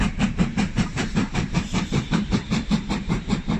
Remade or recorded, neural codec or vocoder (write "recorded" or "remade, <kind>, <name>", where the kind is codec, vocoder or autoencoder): remade, vocoder, BigVGAN v2